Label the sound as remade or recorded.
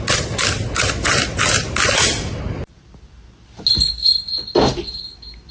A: recorded